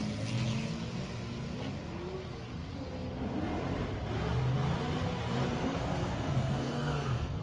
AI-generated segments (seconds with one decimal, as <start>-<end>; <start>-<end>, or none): 5.6-7.4